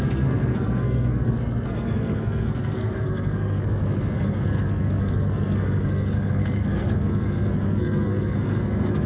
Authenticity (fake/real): fake